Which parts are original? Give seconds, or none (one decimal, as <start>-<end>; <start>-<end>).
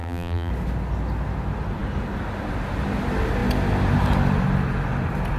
0.5-5.4